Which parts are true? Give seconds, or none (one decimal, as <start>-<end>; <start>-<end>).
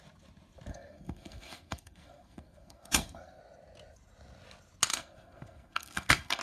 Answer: 0.0-0.7; 3.4-4.9